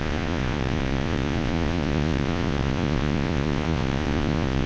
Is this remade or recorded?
remade